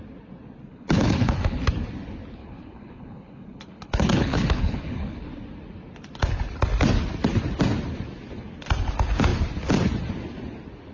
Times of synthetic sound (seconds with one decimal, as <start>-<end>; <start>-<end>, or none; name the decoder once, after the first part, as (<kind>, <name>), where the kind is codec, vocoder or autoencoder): 0.7-1.6 (codec, HILCodec); 2.4-5.3